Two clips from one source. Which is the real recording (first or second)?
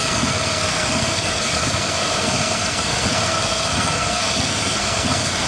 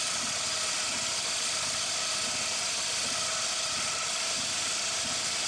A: second